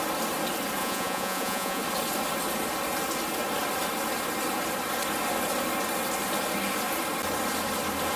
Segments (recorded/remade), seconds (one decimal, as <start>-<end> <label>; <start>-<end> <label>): 0.0-0.8 recorded; 0.8-1.8 remade; 1.8-8.2 recorded